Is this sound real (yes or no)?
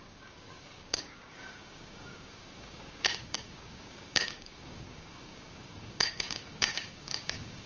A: no